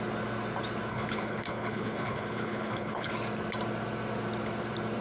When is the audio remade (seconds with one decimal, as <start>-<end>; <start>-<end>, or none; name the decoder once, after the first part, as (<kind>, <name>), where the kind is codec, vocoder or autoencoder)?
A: 0.9-3.1 (codec, HILCodec)